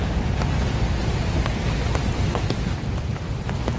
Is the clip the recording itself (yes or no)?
no